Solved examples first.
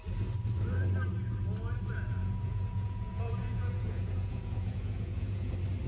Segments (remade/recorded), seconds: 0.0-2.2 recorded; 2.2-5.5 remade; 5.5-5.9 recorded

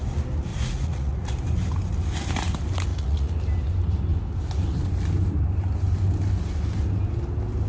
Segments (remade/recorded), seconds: 0.0-0.5 recorded; 0.5-1.3 remade; 1.3-2.9 recorded; 2.9-3.4 remade; 3.4-7.7 recorded

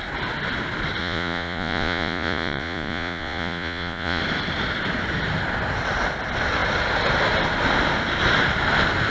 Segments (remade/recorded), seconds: 0.0-1.0 recorded; 1.0-4.2 remade; 4.2-9.1 recorded

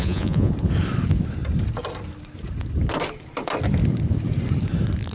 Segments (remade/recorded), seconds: 0.0-0.5 remade; 0.5-5.1 recorded

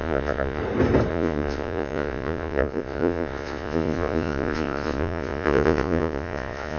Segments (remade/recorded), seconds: 0.0-0.6 remade; 0.6-1.1 recorded; 1.1-6.8 remade

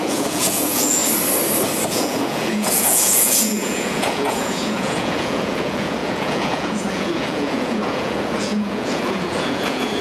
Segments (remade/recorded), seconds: 0.0-1.0 remade; 1.0-1.9 recorded; 1.9-10.0 remade

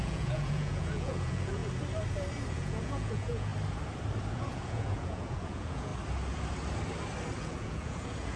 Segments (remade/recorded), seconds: 0.0-1.6 remade; 1.6-2.5 recorded; 2.5-3.5 remade; 3.5-4.3 recorded; 4.3-5.9 remade; 5.9-7.4 recorded; 7.4-8.4 remade